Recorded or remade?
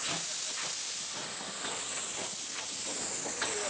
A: recorded